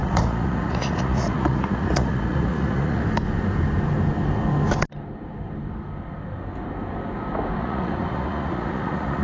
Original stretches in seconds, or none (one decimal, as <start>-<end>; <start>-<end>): 3.0-7.6